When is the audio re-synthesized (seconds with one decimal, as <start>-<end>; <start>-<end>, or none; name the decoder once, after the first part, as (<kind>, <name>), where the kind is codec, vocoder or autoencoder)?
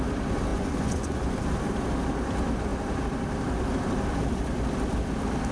0.5-1.4 (vocoder, Vocos)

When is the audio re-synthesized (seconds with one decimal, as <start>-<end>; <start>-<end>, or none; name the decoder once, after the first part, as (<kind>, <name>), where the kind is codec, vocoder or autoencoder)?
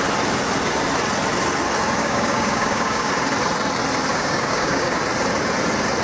2.0-3.1 (codec, DAC); 4.1-5.0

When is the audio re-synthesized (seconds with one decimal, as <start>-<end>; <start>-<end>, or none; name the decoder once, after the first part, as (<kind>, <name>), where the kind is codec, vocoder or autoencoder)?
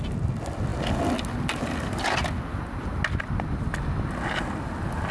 none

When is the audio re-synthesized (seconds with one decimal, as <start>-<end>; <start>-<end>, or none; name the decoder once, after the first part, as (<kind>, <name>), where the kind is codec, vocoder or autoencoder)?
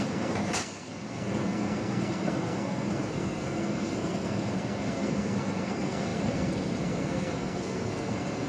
0.0-8.5 (codec, SNAC)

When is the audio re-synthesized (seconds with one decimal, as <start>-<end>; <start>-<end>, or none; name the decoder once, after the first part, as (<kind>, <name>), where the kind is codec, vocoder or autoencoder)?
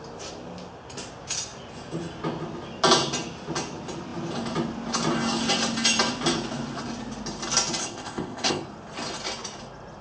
7.8-8.6 (codec, ZipCodec)